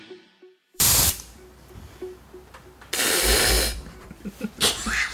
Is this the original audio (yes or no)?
no